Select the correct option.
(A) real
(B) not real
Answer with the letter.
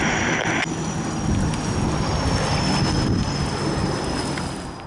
A